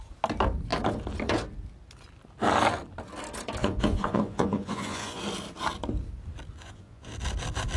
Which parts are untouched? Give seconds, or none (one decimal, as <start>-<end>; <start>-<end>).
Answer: 0.0-3.6; 5.2-6.6; 7.1-7.8